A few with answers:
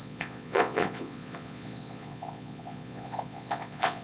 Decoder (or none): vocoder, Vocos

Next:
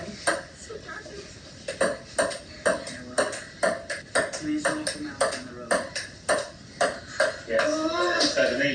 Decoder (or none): none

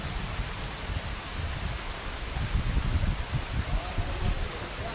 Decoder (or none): none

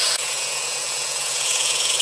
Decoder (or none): vocoder, Vocos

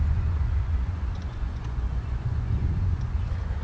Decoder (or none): vocoder, Vocos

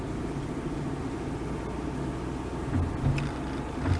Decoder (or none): none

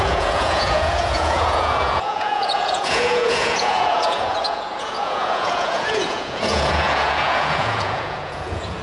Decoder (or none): vocoder, Vocos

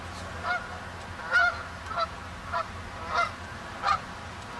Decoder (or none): none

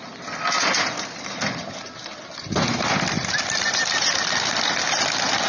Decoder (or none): none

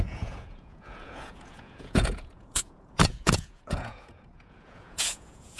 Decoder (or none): vocoder, Vocos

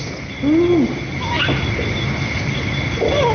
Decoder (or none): none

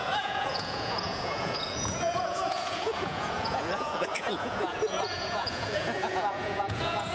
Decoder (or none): vocoder, Vocos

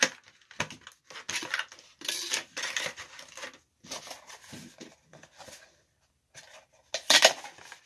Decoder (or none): none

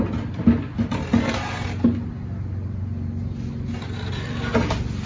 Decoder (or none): none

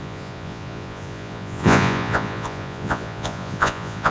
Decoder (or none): vocoder, Vocos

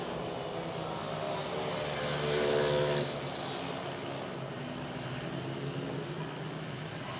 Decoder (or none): none